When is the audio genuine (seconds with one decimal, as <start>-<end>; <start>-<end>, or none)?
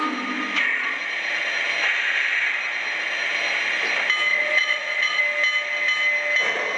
0.0-0.7; 1.3-4.3; 5.2-6.8